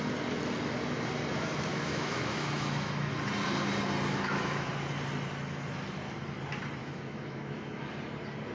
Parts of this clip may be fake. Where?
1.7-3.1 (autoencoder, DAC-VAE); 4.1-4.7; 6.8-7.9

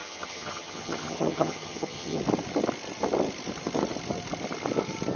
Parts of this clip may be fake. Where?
0.0-2.2 (vocoder, HiFi-GAN)

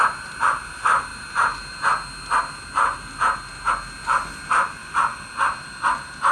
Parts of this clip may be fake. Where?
none

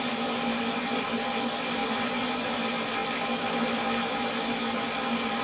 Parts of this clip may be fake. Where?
1.8-2.5 (vocoder, BigVGAN v2)

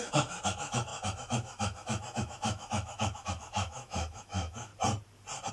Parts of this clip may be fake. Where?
0.0-4.7 (autoencoder, DAC-VAE)

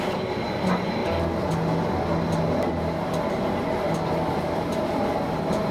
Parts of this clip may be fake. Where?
0.0-1.0 (vocoder, BigVGAN v2); 4.4-5.7

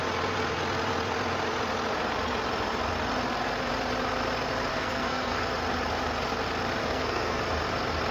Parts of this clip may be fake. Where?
4.7-5.5 (codec, SNAC); 6.8-7.4